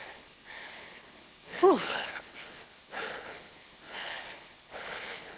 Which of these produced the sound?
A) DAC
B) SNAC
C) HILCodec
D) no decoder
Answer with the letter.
C